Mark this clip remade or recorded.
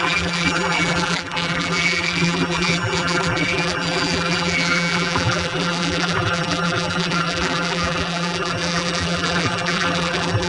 remade